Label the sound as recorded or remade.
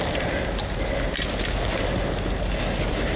recorded